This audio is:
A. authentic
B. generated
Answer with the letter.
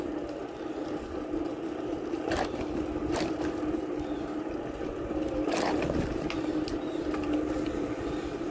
A